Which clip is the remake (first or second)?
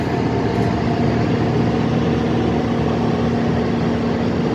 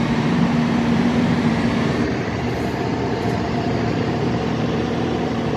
second